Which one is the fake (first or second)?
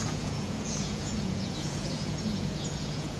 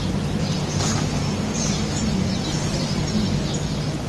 first